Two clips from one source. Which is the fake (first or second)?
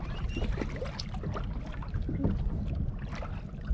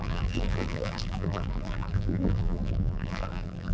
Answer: second